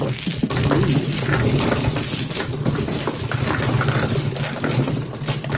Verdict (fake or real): real